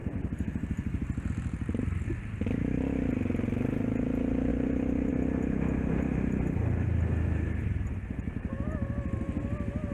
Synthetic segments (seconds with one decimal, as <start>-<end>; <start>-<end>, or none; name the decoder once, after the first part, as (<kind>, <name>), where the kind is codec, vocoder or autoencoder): none